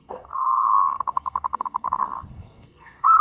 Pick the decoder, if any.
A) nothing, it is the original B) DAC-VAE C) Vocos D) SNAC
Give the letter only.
D